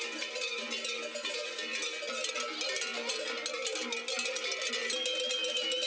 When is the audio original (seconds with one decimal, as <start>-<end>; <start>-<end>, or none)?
0.0-5.9